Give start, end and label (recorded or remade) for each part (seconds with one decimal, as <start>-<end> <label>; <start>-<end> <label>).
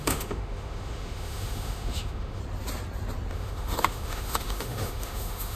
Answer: 0.0-2.4 remade; 2.4-3.3 recorded; 3.3-5.6 remade